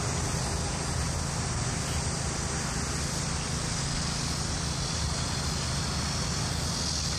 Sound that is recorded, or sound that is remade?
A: recorded